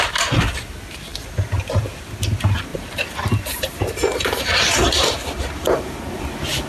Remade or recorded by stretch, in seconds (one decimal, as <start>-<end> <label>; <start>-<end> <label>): 0.0-2.7 recorded; 2.7-6.2 remade; 6.2-6.7 recorded